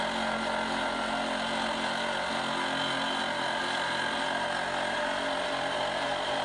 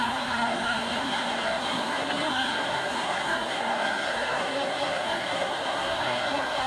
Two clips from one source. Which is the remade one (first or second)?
second